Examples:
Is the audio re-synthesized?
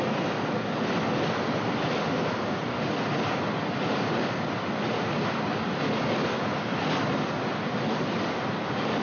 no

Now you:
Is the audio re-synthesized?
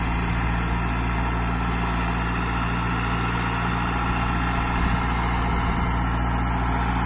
no